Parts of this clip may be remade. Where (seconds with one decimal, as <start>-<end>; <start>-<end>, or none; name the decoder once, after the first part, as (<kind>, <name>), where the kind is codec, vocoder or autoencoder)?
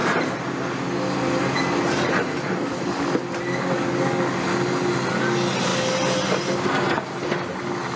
none